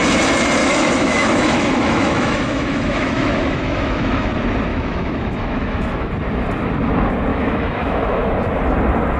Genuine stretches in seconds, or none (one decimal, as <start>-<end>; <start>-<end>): 0.0-0.6; 4.3-4.7; 6.1-7.3; 8.3-9.2